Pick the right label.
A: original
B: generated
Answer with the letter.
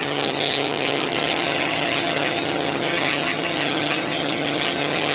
B